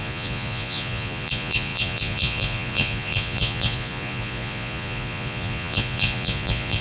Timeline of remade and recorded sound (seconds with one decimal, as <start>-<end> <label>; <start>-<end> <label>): 0.0-6.8 remade